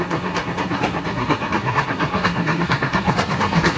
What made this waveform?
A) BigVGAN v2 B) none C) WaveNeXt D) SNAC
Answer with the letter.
D